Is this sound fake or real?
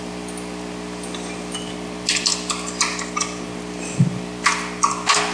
real